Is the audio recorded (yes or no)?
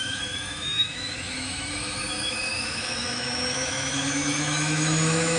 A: no